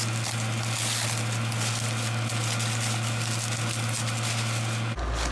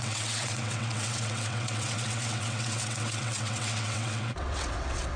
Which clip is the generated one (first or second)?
second